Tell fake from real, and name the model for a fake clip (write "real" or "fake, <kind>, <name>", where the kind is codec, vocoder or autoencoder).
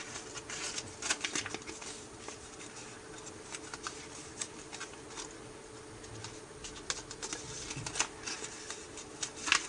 real